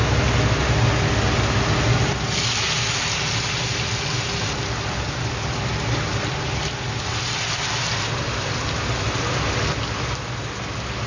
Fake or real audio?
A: real